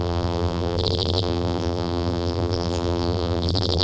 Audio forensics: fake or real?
fake